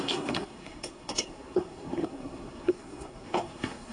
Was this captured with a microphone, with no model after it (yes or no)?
no